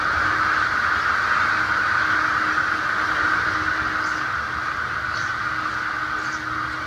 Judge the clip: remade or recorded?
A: recorded